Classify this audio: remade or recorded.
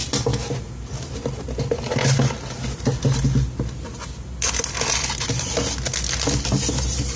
recorded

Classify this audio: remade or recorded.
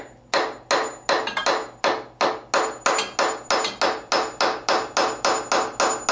recorded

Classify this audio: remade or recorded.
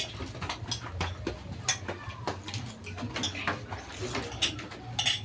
recorded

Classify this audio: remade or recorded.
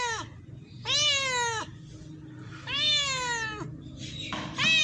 recorded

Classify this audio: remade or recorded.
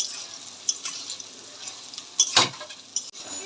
recorded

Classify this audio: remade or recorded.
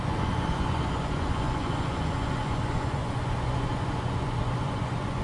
remade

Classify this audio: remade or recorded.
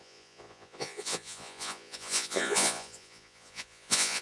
remade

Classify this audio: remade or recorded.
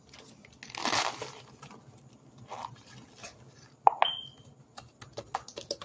recorded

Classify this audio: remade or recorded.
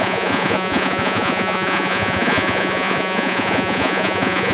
remade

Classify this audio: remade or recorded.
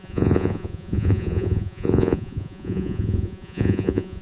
remade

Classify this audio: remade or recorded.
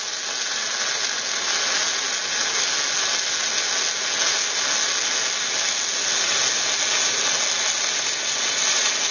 recorded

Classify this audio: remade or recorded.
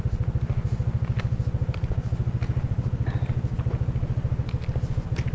recorded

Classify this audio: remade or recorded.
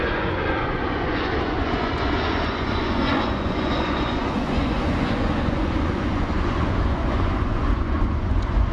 remade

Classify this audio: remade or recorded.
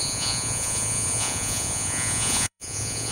remade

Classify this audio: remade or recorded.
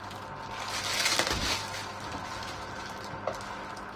recorded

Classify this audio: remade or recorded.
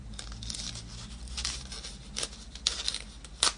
recorded